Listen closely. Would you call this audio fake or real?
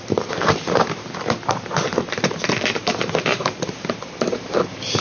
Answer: fake